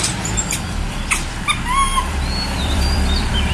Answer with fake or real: fake